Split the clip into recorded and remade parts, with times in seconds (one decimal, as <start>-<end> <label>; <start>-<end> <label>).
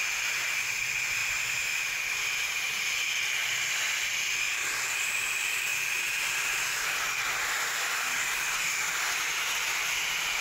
0.0-4.5 recorded; 4.5-5.0 remade; 5.0-10.4 recorded